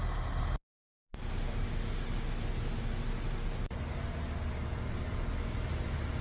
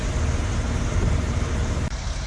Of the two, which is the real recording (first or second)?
first